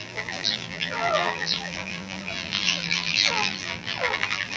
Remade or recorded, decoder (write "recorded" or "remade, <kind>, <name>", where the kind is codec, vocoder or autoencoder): remade, vocoder, BigVGAN v2